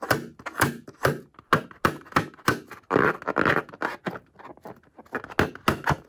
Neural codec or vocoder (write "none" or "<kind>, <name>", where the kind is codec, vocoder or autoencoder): none